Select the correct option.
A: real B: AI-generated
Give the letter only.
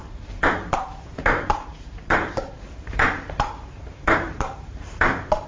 B